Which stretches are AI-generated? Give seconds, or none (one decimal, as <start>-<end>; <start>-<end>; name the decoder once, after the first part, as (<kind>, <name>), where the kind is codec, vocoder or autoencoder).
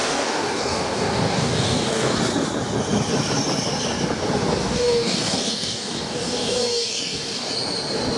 0.0-2.2 (codec, DAC); 4.6-7.5